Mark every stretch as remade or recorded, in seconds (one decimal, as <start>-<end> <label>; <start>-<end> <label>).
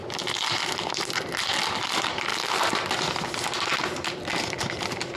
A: 0.0-5.2 recorded